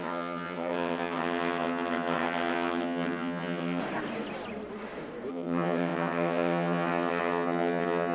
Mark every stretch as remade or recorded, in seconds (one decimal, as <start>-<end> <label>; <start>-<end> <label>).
0.0-3.8 remade; 3.8-5.3 recorded; 5.3-8.1 remade